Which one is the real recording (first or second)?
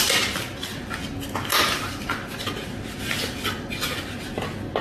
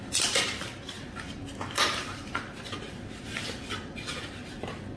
first